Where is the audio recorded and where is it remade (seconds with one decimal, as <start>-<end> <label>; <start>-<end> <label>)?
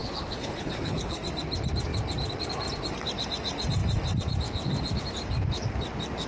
0.0-1.2 remade; 1.2-6.3 recorded